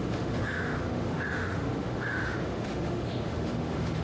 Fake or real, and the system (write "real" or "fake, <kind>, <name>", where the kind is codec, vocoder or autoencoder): fake, autoencoder, DAC-VAE